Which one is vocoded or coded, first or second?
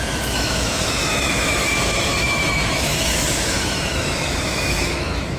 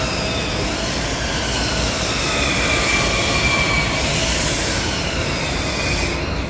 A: first